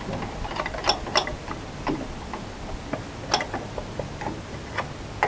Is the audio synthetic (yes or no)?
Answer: no